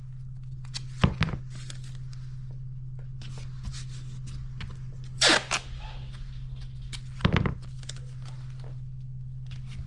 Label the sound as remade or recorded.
recorded